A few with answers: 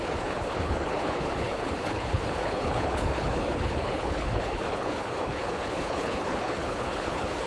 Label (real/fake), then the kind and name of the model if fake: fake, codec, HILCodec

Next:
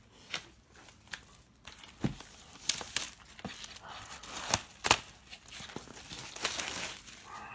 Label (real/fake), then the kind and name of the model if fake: real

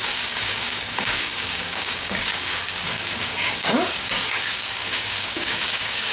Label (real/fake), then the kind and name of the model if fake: fake, codec, DAC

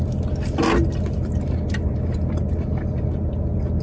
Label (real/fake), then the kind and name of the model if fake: real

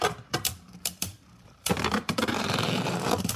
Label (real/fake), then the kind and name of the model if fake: fake, vocoder, BigVGAN v2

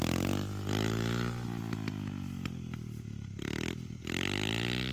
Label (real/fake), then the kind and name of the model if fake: real